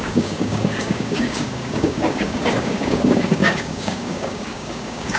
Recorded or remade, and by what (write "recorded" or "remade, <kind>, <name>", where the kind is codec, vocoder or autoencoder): remade, codec, DAC